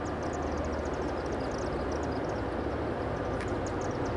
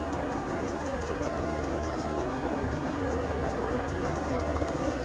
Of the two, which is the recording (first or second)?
first